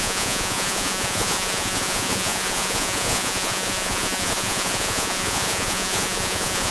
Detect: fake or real fake